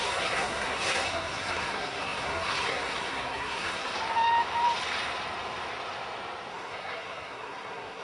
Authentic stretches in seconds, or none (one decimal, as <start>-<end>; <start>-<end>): 3.9-6.5